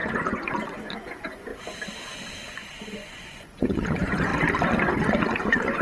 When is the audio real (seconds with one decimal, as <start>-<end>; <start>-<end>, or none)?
1.5-2.5; 4.3-5.0